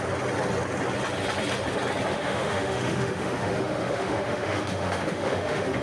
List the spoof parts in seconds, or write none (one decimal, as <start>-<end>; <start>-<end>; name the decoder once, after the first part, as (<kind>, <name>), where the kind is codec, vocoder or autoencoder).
2.1-5.8 (autoencoder, DAC-VAE)